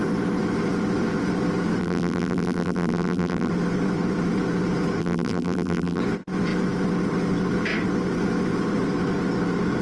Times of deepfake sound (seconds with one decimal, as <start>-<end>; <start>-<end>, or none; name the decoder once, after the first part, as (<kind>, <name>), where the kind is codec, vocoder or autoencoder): 1.8-3.5 (vocoder, BigVGAN v2); 5.0-6.0